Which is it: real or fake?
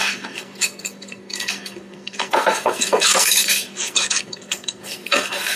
fake